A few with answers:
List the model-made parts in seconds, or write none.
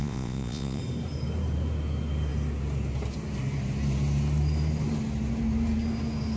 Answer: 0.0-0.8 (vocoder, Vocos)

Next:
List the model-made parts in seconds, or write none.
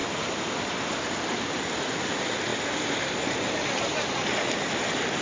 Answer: none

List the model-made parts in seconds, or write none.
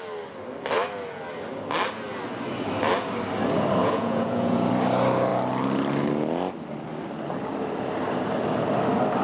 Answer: 3.8-4.7 (vocoder, Vocos)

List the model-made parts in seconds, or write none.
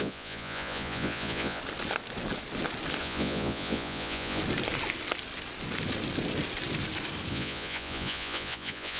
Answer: 0.0-1.6 (vocoder, Vocos); 3.0-4.4; 7.3-9.0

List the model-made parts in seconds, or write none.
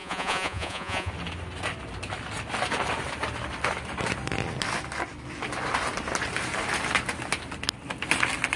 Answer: 0.0-1.1 (vocoder, Vocos)